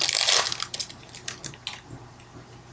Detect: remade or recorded recorded